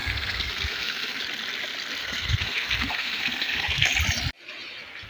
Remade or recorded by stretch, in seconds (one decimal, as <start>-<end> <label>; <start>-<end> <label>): 0.0-1.2 remade; 1.2-2.0 recorded; 2.0-3.9 remade; 3.9-5.1 recorded